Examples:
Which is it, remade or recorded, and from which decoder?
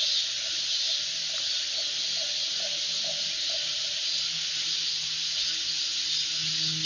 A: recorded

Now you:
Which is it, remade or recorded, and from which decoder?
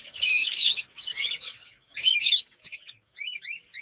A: remade, codec, DAC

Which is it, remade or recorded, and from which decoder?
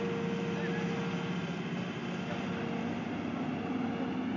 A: recorded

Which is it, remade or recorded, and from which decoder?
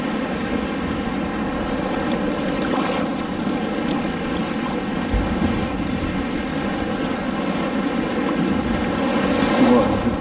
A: recorded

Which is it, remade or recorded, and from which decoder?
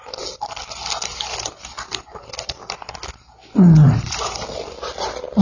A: recorded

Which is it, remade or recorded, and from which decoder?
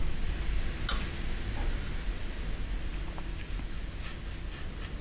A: recorded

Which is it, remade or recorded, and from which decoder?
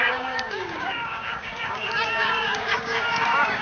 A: remade, codec, DAC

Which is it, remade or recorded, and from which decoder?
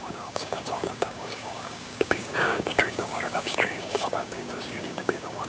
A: remade, codec, DAC